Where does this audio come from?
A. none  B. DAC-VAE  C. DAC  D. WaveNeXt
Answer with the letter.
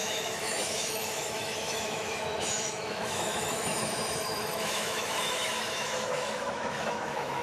B